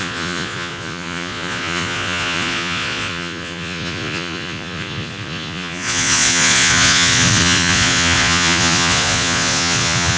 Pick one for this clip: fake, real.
fake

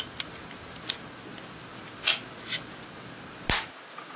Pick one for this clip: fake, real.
real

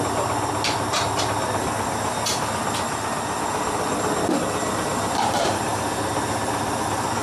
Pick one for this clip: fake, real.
real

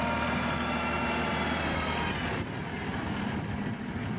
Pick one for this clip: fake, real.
real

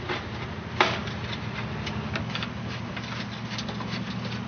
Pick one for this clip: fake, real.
real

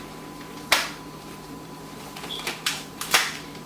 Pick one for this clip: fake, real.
fake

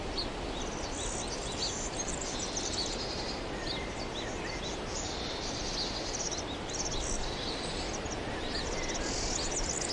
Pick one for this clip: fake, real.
real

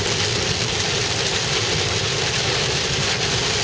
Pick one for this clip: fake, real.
real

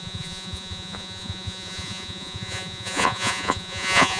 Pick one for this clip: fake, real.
fake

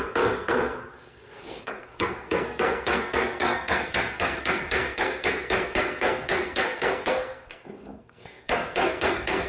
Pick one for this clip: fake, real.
fake